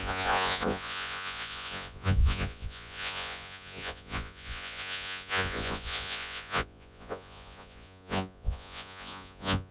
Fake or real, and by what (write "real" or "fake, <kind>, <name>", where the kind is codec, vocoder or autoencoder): fake, vocoder, Vocos